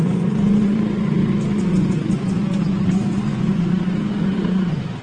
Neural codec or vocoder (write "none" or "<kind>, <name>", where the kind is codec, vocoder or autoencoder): vocoder, Vocos